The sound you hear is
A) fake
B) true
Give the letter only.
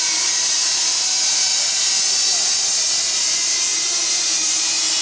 B